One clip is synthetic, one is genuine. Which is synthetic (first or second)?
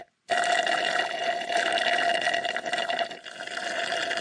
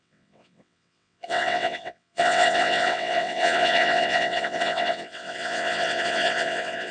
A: second